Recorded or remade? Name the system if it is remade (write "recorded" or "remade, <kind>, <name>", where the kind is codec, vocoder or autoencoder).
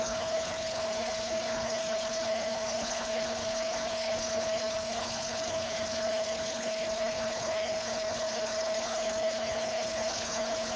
remade, codec, HILCodec